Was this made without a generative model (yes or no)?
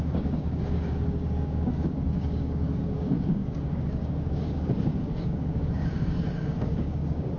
no